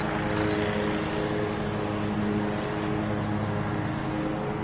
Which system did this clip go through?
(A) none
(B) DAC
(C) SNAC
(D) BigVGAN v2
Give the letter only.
A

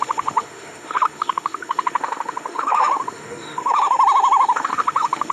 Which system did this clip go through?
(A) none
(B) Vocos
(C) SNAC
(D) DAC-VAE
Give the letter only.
D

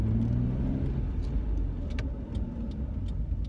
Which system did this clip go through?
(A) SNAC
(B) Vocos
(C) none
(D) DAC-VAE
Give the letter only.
C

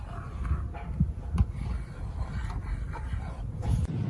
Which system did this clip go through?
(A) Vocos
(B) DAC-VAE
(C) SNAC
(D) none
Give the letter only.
D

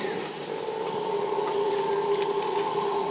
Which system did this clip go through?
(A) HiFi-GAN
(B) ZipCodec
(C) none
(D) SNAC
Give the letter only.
C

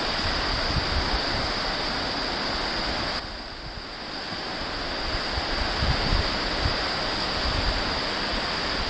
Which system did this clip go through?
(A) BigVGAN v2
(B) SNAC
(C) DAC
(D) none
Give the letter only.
D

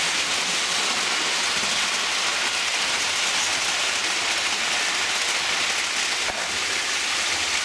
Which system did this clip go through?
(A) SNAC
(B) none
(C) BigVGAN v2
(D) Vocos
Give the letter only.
B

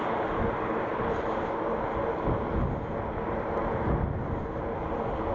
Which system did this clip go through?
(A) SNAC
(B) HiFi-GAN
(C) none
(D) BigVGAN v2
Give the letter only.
C